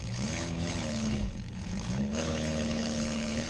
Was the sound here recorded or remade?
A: remade